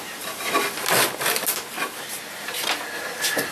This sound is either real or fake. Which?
real